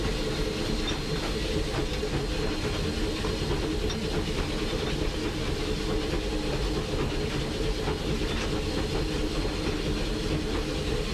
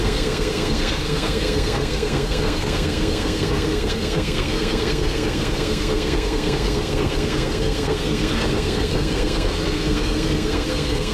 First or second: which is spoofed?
second